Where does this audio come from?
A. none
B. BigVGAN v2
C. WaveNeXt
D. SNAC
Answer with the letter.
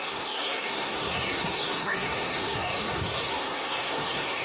D